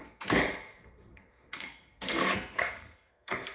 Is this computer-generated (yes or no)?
yes